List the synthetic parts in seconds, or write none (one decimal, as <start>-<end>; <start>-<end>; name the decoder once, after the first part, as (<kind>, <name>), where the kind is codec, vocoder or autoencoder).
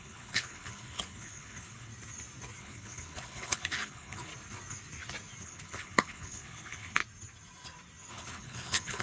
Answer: 0.0-1.9 (codec, HILCodec); 2.6-4.3; 5.4-7.0; 8.1-9.0